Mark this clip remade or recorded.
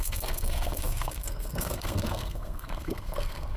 remade